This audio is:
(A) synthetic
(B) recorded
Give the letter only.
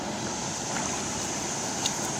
B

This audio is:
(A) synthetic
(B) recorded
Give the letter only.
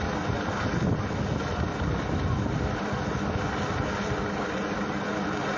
B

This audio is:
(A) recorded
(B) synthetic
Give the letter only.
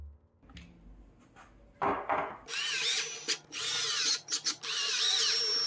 A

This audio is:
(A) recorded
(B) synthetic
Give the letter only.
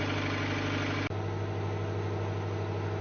A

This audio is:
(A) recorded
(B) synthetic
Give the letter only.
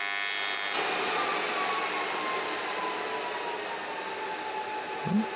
A